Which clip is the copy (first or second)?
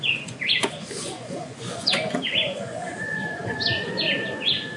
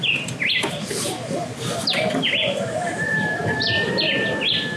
first